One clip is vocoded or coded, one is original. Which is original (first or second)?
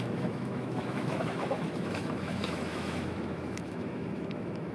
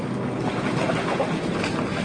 second